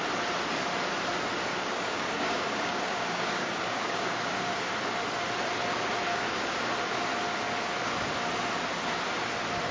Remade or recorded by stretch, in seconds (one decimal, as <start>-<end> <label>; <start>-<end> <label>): 0.0-1.5 recorded; 1.5-4.7 remade; 4.7-6.1 recorded; 6.1-6.6 remade; 6.6-9.7 recorded